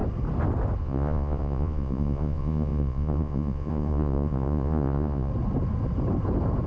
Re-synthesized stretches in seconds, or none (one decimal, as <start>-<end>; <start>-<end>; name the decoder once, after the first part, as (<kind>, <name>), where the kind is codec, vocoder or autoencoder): 0.8-5.3 (vocoder, Vocos)